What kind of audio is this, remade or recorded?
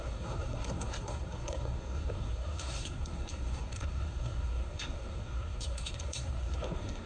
remade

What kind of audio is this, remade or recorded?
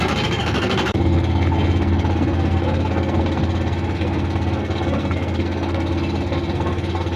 remade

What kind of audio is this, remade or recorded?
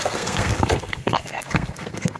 remade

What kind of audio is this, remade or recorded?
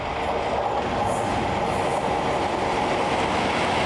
recorded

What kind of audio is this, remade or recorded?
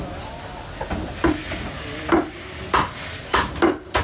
recorded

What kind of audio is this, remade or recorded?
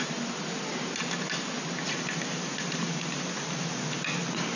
recorded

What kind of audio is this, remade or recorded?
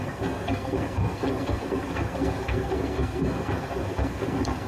remade